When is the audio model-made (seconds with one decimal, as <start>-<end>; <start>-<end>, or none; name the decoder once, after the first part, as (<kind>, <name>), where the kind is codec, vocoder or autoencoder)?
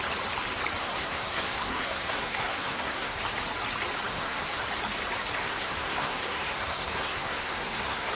0.8-3.2 (codec, SNAC); 4.1-4.6; 5.4-8.1